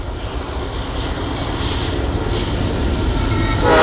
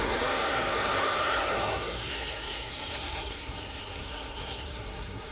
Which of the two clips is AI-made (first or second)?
second